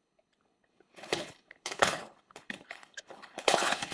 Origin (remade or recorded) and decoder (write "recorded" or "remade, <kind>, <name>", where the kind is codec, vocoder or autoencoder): remade, codec, HILCodec